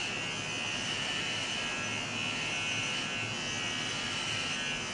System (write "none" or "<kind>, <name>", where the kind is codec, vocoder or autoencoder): none